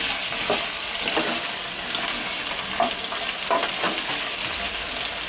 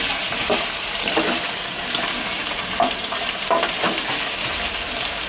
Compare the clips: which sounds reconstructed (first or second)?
second